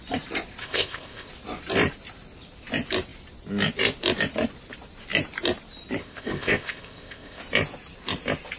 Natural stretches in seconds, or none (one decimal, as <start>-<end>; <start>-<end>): 0.0-0.6; 1.3-6.0; 7.4-8.6